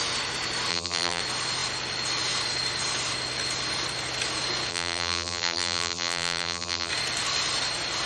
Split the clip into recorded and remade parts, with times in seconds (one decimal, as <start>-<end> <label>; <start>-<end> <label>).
0.0-0.7 recorded; 0.7-1.2 remade; 1.2-4.7 recorded; 4.7-6.9 remade; 6.9-8.1 recorded